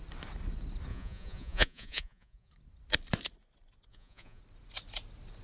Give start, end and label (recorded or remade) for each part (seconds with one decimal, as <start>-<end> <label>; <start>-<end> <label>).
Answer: 0.0-0.9 recorded; 0.9-2.5 remade; 2.5-3.9 recorded; 3.9-4.4 remade; 4.4-5.4 recorded

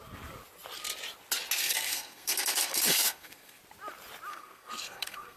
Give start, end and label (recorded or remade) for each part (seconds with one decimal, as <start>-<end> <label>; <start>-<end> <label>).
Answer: 0.0-1.6 recorded; 1.6-3.6 remade; 3.6-4.3 recorded; 4.3-5.4 remade

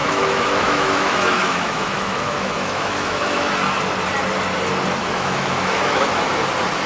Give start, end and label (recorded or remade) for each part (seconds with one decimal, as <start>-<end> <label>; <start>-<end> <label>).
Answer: 0.0-3.5 remade; 3.5-5.0 recorded; 5.0-6.3 remade; 6.3-6.9 recorded

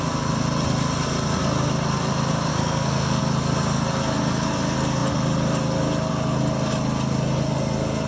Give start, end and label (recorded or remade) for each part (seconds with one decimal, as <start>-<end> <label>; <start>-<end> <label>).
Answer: 0.0-2.5 recorded; 2.5-3.2 remade; 3.2-8.1 recorded

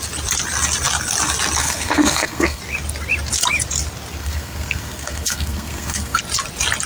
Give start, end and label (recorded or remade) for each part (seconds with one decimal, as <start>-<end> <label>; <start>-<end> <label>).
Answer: 0.0-1.6 recorded; 1.6-2.6 remade; 2.6-4.2 recorded; 4.2-6.2 remade; 6.2-6.9 recorded

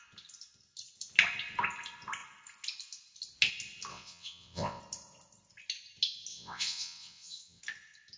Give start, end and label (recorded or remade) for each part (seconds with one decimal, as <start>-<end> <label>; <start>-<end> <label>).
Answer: 0.0-3.9 recorded; 3.9-4.8 remade; 4.8-6.3 recorded; 6.3-7.6 remade; 7.6-8.2 recorded